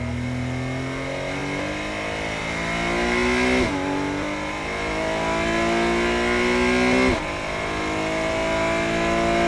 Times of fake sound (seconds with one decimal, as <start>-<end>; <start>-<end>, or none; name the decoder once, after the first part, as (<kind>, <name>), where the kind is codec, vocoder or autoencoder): none